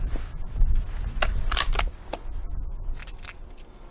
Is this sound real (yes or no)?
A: yes